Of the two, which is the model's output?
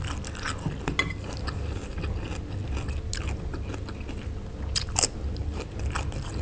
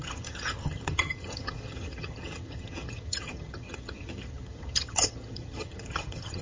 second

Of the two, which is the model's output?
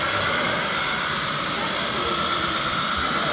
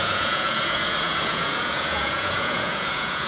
second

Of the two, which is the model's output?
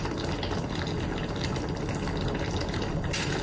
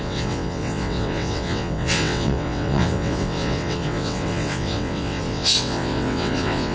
second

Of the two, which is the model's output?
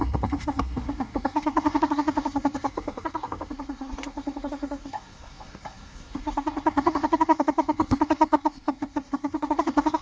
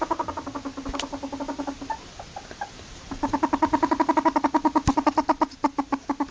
first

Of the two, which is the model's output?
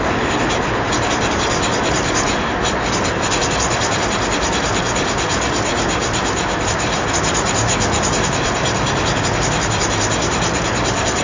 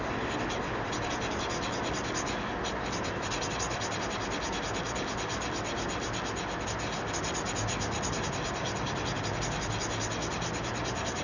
first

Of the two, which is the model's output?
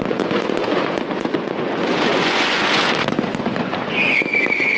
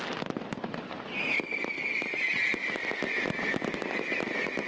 first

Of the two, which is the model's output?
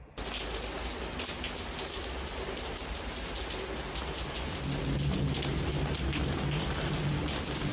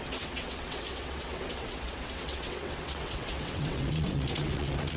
second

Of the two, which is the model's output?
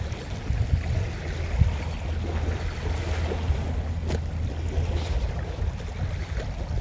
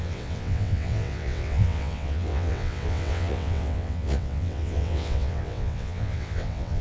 second